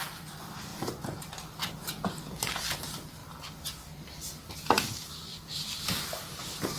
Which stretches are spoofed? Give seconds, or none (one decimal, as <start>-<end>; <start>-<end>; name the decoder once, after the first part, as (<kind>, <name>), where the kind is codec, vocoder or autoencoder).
none